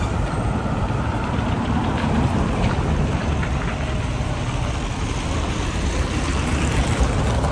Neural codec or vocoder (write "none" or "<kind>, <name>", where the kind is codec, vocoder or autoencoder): vocoder, BigVGAN v2